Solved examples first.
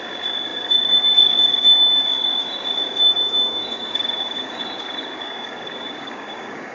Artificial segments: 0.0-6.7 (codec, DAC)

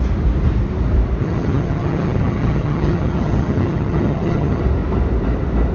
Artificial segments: 1.2-4.6 (vocoder, HiFi-GAN)

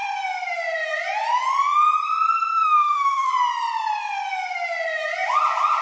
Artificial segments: 2.5-3.3 (autoencoder, DAC-VAE)

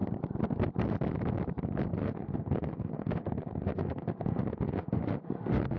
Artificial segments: 2.0-5.8 (autoencoder, DAC-VAE)